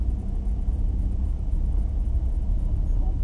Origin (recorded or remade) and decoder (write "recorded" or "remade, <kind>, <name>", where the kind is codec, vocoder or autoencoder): remade, vocoder, Vocos